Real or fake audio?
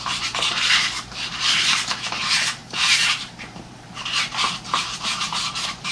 fake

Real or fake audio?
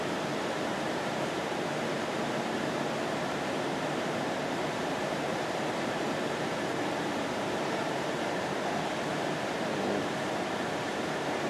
fake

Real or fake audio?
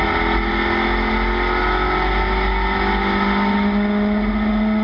real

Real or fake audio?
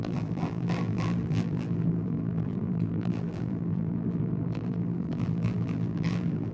fake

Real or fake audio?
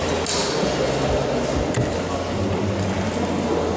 real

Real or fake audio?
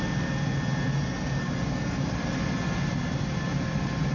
real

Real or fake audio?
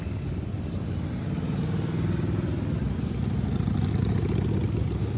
real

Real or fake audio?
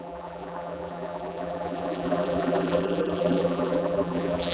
fake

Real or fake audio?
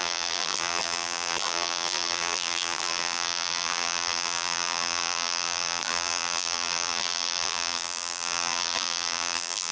fake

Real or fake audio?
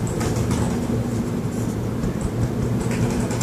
real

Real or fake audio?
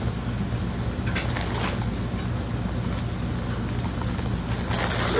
real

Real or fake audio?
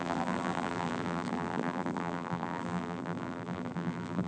fake